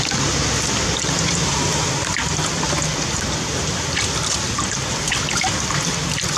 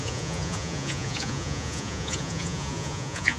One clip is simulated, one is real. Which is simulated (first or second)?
second